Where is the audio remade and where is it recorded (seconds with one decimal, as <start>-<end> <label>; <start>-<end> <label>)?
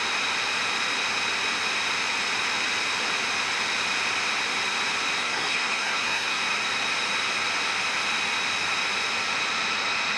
0.0-5.2 recorded; 5.2-6.4 remade; 6.4-10.2 recorded